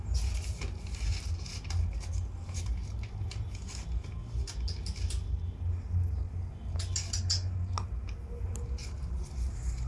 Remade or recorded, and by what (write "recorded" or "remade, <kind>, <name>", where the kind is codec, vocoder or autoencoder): recorded